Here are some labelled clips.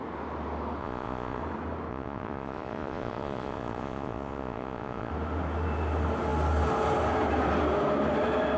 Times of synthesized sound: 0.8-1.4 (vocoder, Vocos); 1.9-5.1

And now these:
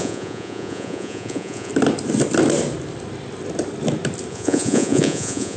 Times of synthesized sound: 0.0-1.7 (vocoder, Vocos); 4.3-5.6

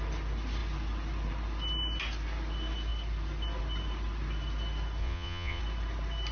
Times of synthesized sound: 5.0-5.6 (vocoder, Vocos)

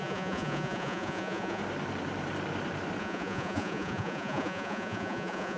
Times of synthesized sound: 0.0-1.6 (vocoder, Vocos); 3.0-5.6

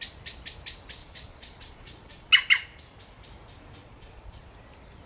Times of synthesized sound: 1.0-2.3 (vocoder, Vocos); 3.8-4.5

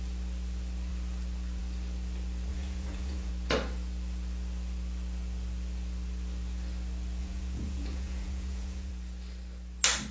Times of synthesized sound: 2.5-3.3 (vocoder, Vocos); 7.2-8.9

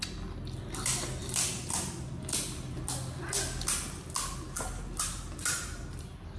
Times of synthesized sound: none